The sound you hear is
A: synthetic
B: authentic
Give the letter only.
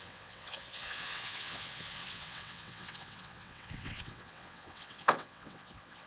A